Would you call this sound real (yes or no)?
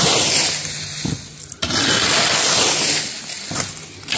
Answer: yes